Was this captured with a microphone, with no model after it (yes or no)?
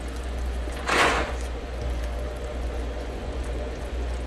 no